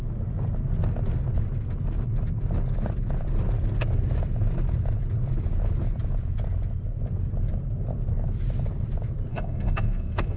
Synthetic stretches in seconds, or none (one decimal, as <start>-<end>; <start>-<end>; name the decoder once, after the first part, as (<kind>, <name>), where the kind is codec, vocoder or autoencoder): 9.3-10.4 (codec, SNAC)